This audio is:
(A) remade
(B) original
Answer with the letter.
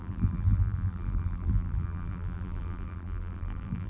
A